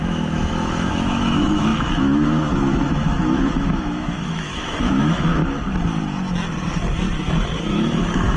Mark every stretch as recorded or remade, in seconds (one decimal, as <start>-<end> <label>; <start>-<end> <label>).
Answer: 0.0-5.4 remade; 5.4-7.7 recorded; 7.7-8.4 remade